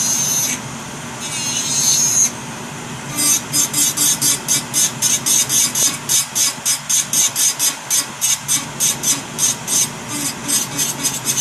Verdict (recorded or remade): recorded